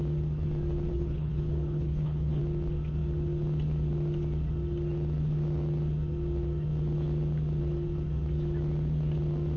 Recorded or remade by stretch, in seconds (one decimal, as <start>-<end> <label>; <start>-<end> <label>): 0.0-0.9 recorded; 0.9-2.4 remade; 2.4-9.6 recorded